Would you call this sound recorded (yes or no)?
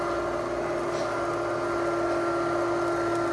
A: yes